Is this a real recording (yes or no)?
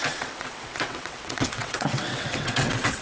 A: no